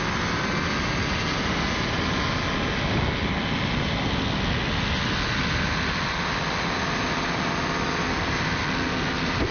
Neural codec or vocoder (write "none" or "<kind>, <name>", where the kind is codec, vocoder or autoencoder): none